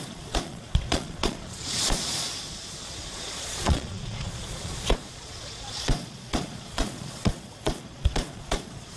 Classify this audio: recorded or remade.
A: remade